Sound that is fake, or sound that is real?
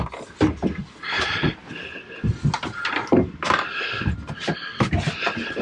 real